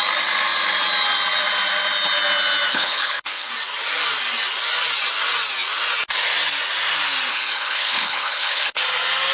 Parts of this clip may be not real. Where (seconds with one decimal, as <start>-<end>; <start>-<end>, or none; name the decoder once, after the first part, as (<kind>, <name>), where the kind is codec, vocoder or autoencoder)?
2.7-3.5 (codec, HILCodec); 7.3-8.8